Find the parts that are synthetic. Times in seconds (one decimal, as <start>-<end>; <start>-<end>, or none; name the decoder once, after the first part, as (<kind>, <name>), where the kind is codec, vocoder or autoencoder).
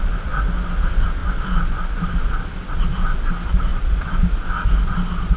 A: none